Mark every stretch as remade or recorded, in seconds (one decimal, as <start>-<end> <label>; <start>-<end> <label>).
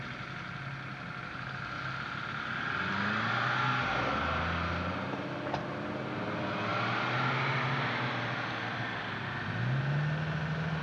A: 0.0-10.8 recorded